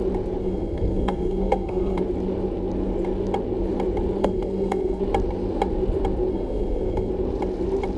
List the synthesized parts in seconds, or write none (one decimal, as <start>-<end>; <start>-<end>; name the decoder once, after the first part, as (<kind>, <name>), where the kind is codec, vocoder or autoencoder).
0.4-2.0 (codec, SNAC); 4.2-5.0; 6.3-7.1